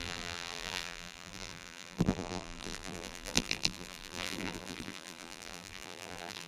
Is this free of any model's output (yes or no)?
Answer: no